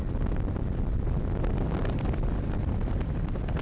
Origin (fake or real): real